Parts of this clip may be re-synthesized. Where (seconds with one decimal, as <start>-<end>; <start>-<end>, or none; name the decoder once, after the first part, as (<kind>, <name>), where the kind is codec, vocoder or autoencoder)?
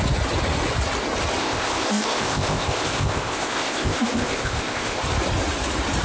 1.4-5.0 (codec, ZipCodec)